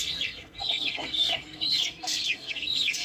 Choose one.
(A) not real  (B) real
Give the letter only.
A